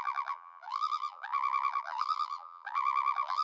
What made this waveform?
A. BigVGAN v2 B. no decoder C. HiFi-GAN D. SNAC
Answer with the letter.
A